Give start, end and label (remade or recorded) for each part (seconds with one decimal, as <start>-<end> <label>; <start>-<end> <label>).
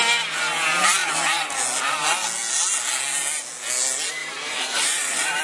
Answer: 0.0-4.2 recorded; 4.2-5.4 remade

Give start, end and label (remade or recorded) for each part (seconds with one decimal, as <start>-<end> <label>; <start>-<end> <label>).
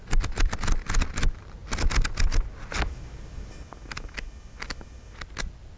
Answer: 0.0-5.8 recorded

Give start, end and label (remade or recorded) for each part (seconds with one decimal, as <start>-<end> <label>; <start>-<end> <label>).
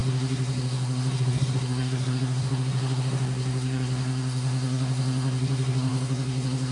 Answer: 0.0-6.7 remade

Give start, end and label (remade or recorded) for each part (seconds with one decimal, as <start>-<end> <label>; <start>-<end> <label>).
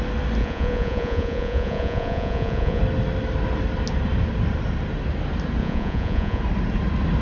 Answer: 0.0-0.4 recorded; 0.4-2.8 remade; 2.8-5.6 recorded; 5.6-6.4 remade; 6.4-7.2 recorded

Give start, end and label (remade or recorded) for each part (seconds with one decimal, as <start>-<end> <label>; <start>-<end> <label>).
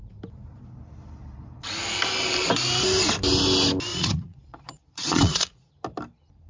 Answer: 0.0-3.9 recorded; 3.9-5.7 remade; 5.7-6.5 recorded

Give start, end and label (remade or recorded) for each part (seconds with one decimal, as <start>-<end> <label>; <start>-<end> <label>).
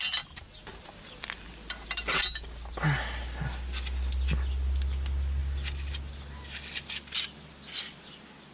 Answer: 0.0-8.5 recorded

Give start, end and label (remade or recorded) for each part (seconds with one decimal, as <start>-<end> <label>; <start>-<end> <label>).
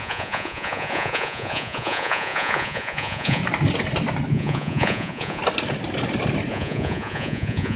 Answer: 0.0-3.4 remade; 3.4-4.3 recorded; 4.3-5.4 remade; 5.4-6.5 recorded; 6.5-7.8 remade